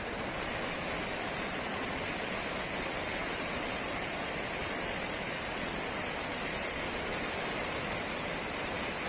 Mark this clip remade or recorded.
recorded